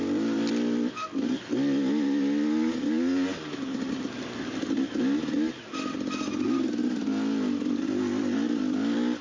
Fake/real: real